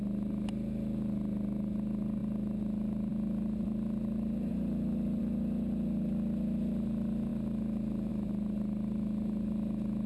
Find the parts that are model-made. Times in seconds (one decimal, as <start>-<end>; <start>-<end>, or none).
none